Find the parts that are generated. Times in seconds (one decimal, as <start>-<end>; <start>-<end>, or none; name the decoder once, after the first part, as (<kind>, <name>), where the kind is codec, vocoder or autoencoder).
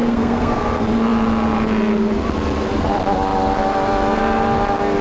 0.0-0.6 (codec, SNAC)